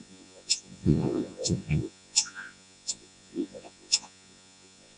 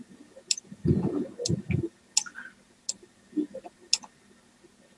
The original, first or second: second